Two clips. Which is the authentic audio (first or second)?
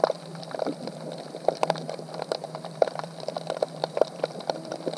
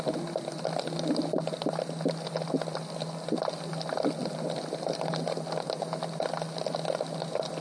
second